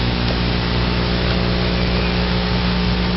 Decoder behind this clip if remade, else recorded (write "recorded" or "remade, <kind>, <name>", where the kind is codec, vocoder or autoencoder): recorded